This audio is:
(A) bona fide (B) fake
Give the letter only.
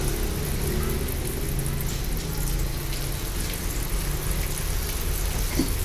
A